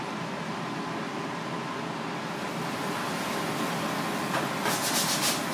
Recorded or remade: recorded